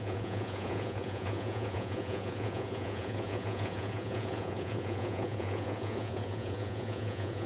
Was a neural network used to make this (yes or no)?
yes